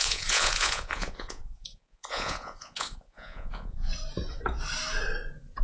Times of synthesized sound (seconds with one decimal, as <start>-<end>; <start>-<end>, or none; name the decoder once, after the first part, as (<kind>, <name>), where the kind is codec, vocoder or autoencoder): 0.0-3.9 (vocoder, Vocos)